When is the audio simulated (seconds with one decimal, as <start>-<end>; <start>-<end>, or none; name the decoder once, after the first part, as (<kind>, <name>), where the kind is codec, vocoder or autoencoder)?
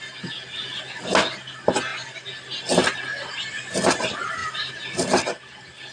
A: none